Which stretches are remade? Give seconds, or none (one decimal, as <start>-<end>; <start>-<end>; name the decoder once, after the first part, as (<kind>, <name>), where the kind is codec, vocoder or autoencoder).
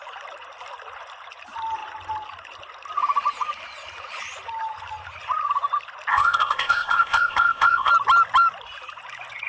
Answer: 6.1-7.9 (codec, ZipCodec)